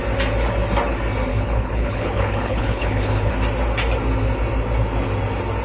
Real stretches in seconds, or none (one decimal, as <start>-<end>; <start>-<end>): 0.0-1.3; 3.3-5.6

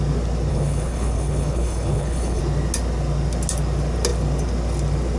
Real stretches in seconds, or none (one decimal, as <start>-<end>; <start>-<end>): 0.0-0.5; 2.4-5.2

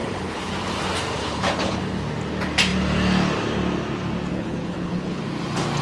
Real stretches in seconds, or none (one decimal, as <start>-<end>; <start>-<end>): 0.5-1.2; 1.8-4.3; 5.2-5.8

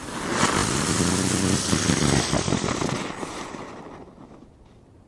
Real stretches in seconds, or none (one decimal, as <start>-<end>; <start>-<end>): 0.0-5.1

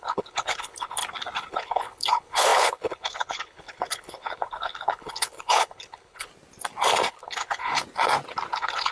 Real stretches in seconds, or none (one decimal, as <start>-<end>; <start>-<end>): 1.0-1.5; 6.3-7.1; 7.7-8.5

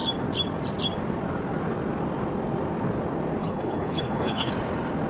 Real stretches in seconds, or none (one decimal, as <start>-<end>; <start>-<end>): 0.0-3.4; 4.5-5.1

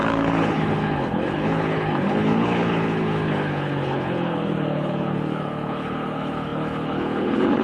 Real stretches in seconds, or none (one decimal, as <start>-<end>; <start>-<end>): none